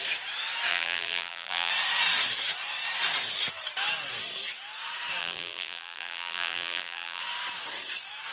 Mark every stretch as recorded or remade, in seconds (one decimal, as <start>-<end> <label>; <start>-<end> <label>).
0.0-0.7 recorded; 0.7-1.7 remade; 1.7-5.2 recorded; 5.2-7.2 remade; 7.2-8.3 recorded